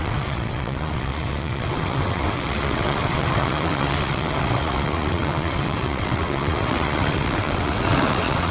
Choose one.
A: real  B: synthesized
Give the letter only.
B